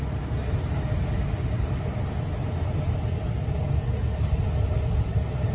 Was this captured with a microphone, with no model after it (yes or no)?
yes